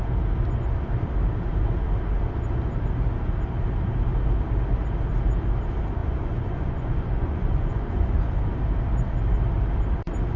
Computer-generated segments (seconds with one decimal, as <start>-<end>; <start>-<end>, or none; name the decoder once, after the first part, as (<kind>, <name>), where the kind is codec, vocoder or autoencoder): 6.0-8.3 (vocoder, Vocos)